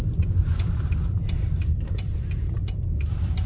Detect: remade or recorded remade